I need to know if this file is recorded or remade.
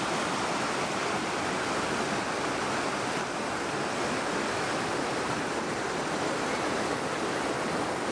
recorded